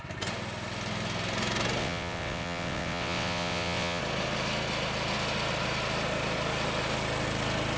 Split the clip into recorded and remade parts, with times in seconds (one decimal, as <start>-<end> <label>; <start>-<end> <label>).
0.0-1.8 recorded; 1.8-4.0 remade; 4.0-7.8 recorded